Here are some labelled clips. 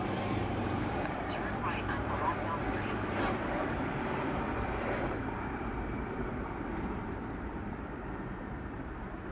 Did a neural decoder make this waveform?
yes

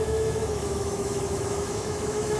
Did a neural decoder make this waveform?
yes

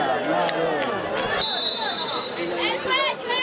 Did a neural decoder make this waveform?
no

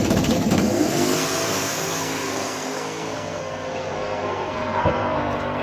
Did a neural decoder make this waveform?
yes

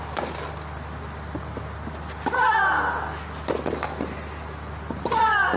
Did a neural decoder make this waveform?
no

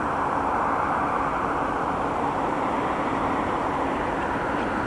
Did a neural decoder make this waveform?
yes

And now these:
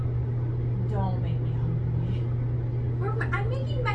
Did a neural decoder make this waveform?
no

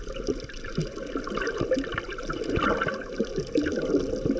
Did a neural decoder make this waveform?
no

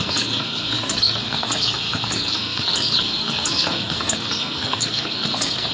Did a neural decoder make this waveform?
yes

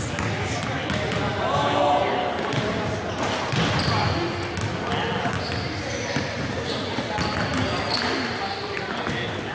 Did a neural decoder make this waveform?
no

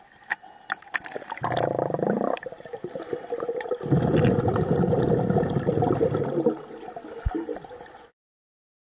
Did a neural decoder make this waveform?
no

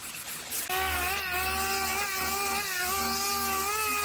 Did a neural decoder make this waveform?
no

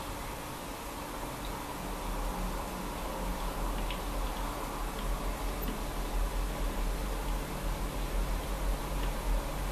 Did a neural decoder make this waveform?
no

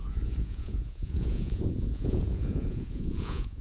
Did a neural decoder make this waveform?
yes